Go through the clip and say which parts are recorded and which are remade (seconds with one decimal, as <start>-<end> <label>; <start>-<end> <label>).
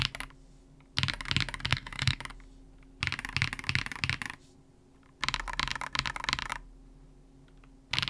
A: 0.0-1.7 recorded; 1.7-2.2 remade; 2.2-8.1 recorded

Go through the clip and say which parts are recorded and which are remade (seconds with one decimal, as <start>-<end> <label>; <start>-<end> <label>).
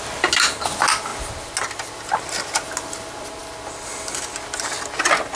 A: 0.0-5.4 recorded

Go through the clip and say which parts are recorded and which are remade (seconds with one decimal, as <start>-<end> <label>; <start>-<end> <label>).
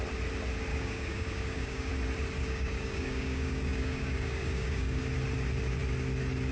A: 0.0-0.7 recorded; 0.7-1.9 remade; 1.9-2.4 recorded; 2.4-5.0 remade; 5.0-6.5 recorded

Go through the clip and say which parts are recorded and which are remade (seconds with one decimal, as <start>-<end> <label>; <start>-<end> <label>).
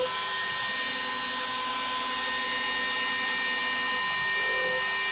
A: 0.0-5.1 recorded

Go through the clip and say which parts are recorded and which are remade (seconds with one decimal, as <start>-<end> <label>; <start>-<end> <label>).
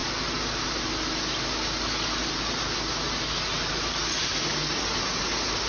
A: 0.0-5.7 recorded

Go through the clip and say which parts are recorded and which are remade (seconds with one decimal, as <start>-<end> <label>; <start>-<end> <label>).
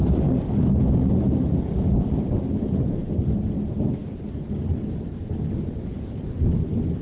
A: 0.0-7.0 recorded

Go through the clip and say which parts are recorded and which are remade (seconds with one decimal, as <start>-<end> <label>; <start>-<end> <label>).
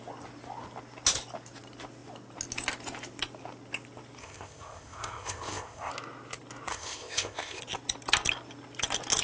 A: 0.0-4.2 recorded; 4.2-5.9 remade; 5.9-6.7 recorded; 6.7-7.6 remade; 7.6-9.2 recorded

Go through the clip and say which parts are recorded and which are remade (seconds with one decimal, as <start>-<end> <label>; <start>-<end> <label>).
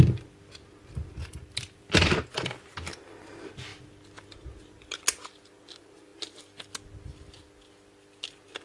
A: 0.0-1.2 recorded; 1.2-1.8 remade; 1.8-8.6 recorded